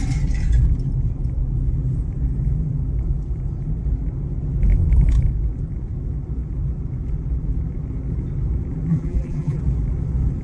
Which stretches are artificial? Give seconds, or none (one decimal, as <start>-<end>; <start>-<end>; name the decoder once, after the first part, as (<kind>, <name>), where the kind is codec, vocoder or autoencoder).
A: 8.9-9.6 (vocoder, BigVGAN v2)